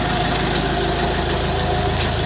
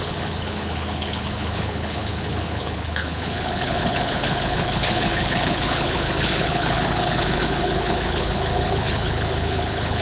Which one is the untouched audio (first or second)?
first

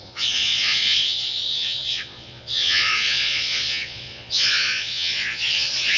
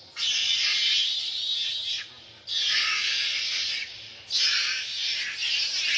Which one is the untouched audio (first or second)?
second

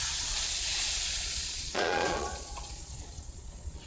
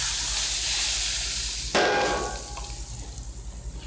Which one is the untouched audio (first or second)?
second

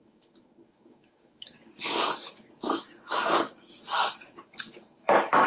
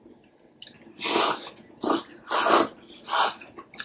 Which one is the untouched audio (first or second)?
second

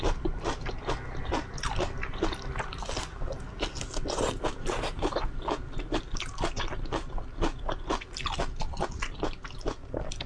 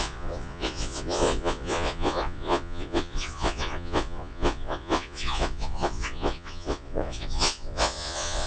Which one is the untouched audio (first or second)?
first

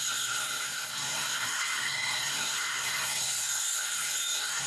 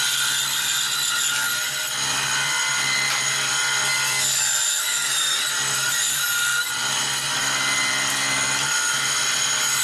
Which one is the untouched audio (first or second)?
second